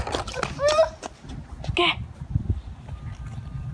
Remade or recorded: recorded